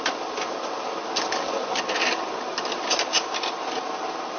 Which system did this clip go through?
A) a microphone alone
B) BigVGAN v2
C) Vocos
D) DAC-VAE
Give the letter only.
A